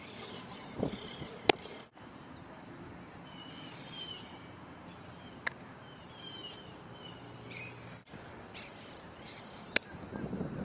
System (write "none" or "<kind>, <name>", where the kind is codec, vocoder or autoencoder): vocoder, BigVGAN v2